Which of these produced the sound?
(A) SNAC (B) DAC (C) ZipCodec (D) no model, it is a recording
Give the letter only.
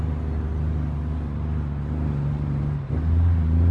D